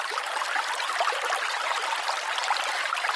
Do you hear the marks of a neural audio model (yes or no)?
no